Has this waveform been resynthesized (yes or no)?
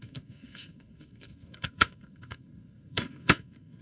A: yes